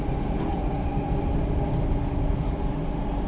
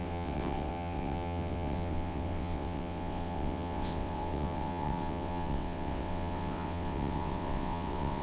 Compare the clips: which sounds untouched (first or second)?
first